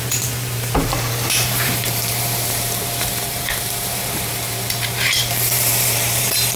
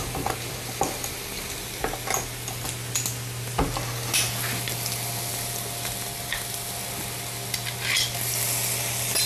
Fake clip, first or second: first